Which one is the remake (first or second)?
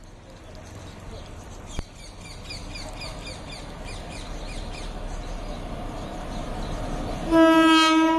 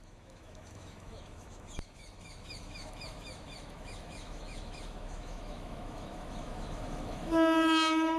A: second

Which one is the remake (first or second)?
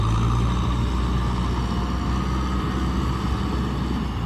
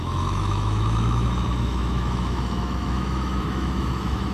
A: second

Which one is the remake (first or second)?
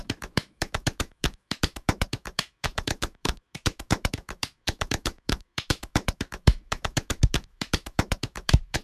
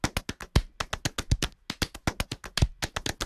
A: first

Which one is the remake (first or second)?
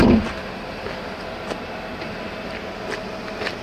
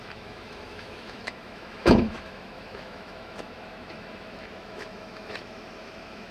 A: second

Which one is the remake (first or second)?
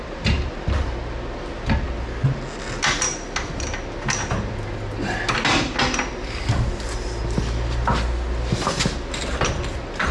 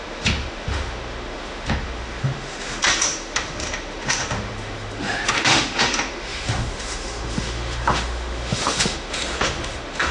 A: second